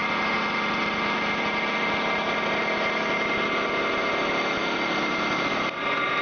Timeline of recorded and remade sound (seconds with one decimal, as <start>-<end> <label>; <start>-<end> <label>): 0.0-6.2 recorded